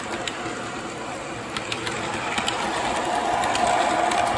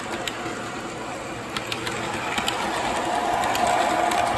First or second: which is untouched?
second